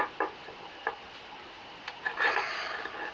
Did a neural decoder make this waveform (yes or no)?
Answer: no